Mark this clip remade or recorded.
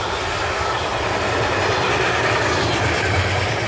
recorded